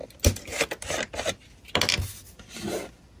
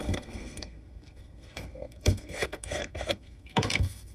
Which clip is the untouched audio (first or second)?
first